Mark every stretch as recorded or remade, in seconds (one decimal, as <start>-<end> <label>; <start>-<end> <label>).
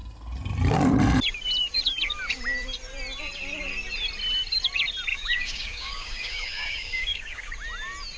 0.0-5.1 recorded; 5.1-7.5 remade; 7.5-8.2 recorded